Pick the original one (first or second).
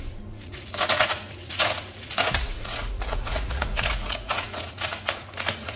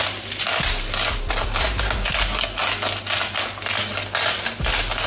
second